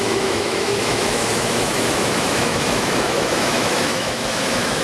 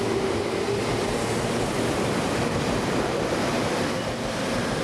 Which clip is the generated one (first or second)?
first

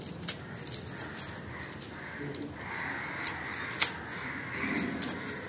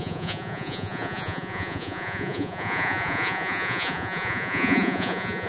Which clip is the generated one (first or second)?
second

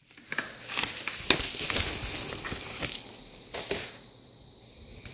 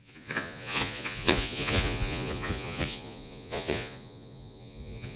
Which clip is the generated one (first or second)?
second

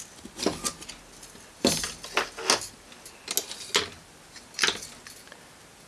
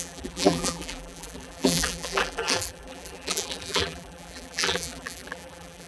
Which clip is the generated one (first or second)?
second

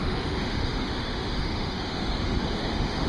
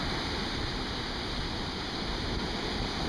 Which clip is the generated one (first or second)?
first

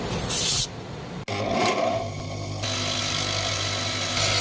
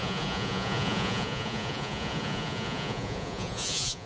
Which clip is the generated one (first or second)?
second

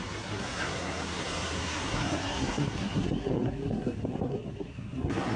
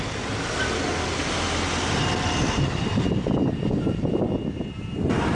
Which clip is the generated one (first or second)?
first